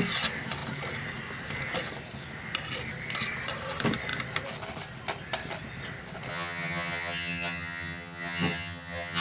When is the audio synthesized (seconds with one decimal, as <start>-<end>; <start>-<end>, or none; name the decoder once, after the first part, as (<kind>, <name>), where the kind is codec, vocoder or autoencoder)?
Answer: 6.3-9.2 (vocoder, HiFi-GAN)